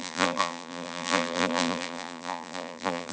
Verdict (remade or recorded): remade